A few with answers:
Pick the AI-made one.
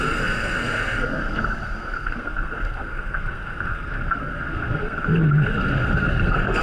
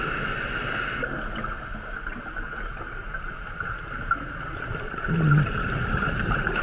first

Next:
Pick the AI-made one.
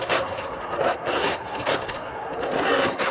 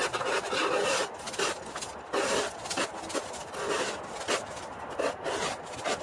first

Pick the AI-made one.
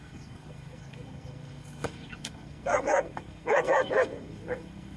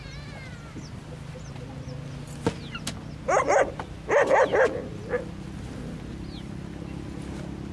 first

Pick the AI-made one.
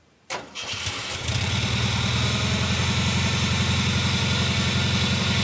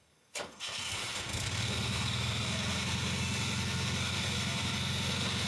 second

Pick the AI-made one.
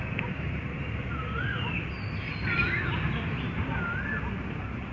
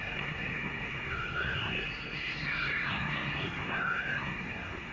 second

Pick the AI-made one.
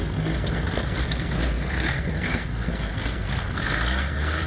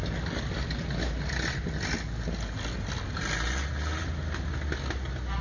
first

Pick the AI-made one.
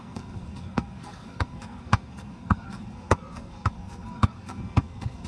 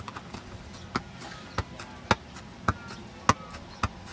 first